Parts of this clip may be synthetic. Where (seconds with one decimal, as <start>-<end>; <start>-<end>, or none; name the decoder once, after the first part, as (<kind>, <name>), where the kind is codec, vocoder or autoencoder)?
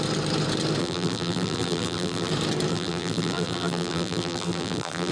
0.8-2.3 (vocoder, BigVGAN v2); 2.7-5.1